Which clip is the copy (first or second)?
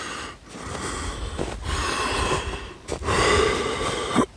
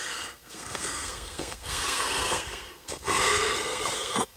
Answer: second